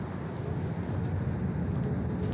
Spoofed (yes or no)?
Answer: no